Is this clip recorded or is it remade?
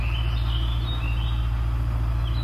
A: recorded